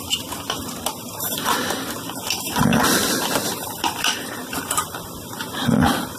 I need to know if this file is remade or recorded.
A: remade